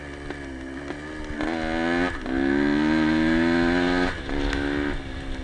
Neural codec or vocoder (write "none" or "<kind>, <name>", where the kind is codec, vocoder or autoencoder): none